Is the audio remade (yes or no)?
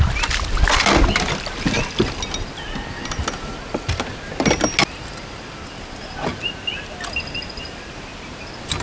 no